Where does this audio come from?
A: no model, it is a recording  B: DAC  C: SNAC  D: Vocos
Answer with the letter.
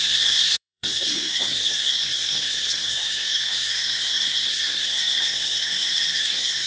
C